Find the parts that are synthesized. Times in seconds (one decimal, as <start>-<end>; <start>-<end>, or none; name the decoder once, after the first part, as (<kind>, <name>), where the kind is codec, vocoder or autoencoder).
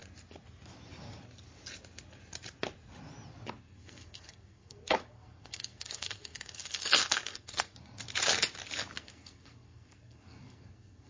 3.6-7.7 (codec, SNAC); 9.0-11.1